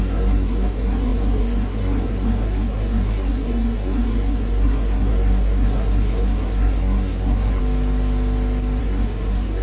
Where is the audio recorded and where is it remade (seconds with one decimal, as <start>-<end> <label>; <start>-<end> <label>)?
0.0-7.6 remade; 7.6-8.8 recorded; 8.8-9.6 remade